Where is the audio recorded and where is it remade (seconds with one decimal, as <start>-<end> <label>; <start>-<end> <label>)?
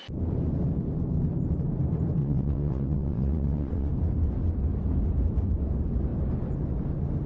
0.0-2.2 recorded; 2.2-3.9 remade; 3.9-7.3 recorded